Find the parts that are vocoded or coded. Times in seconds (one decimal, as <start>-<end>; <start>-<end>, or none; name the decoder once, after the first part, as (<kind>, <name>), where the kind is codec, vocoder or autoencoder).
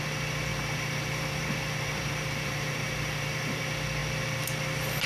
0.5-3.6 (vocoder, BigVGAN v2)